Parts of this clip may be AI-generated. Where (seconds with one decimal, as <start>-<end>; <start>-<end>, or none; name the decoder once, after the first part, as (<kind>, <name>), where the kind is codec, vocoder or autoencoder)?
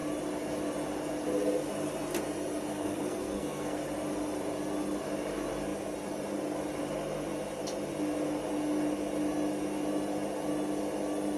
2.7-3.8 (codec, SNAC)